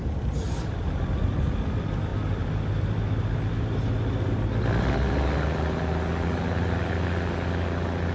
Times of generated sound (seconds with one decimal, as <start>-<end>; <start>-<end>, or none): none